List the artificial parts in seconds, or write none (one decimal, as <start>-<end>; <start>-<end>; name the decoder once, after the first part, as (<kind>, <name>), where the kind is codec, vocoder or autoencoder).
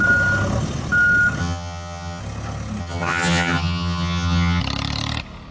1.4-2.2 (vocoder, HiFi-GAN); 2.8-4.6